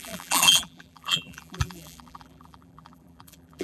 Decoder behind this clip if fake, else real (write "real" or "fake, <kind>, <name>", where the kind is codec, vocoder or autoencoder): fake, vocoder, BigVGAN v2